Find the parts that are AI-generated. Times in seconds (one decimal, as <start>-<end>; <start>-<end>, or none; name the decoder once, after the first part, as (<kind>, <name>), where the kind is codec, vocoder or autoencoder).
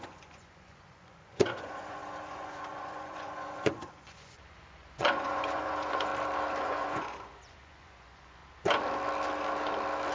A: 0.0-6.1 (vocoder, Vocos); 6.6-8.4